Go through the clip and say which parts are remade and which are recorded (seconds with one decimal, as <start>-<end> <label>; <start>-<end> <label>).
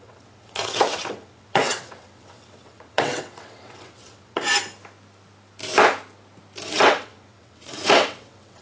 0.0-4.5 remade; 4.5-6.7 recorded; 6.7-8.6 remade